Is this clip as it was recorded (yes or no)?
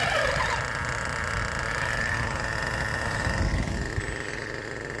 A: yes